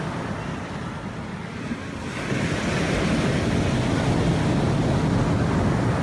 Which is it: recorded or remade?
recorded